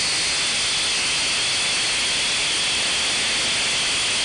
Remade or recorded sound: recorded